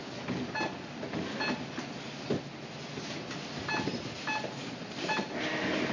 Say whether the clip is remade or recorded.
recorded